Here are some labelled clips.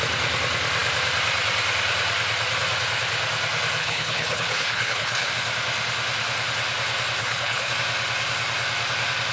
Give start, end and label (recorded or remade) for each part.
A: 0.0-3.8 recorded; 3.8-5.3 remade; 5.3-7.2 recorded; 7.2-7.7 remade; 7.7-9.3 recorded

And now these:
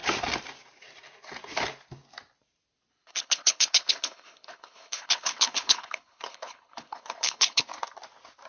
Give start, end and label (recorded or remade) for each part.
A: 0.0-2.9 recorded; 2.9-7.6 remade; 7.6-8.5 recorded

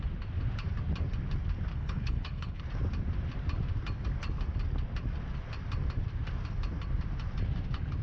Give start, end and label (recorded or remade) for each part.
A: 0.0-1.7 recorded; 1.7-2.6 remade; 2.6-8.0 recorded

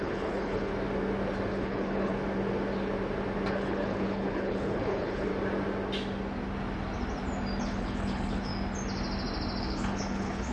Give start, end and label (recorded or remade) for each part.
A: 0.0-0.7 remade; 0.7-1.5 recorded; 1.5-2.1 remade; 2.1-3.5 recorded; 3.5-5.3 remade; 5.3-7.6 recorded; 7.6-8.5 remade; 8.5-9.6 recorded; 9.6-10.5 remade

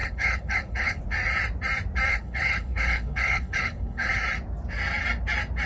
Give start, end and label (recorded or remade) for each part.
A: 0.0-1.0 remade; 1.0-2.1 recorded; 2.1-4.1 remade; 4.1-5.7 recorded